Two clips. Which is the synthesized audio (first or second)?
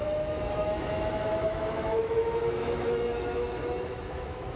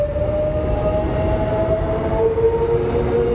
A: first